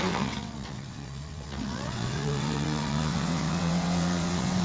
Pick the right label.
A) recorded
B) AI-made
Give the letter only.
B